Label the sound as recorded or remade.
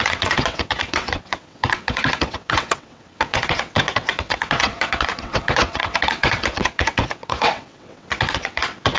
remade